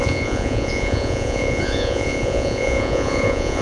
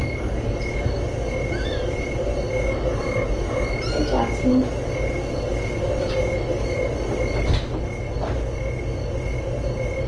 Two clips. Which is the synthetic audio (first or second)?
first